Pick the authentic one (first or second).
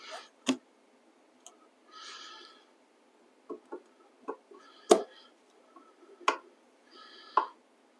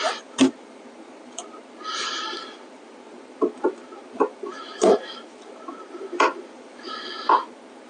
first